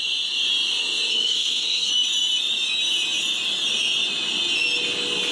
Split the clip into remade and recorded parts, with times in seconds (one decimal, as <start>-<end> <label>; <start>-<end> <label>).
0.0-1.1 recorded; 1.1-1.9 remade; 1.9-5.3 recorded